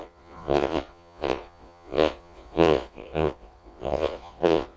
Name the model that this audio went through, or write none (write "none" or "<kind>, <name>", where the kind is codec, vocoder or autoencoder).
vocoder, Vocos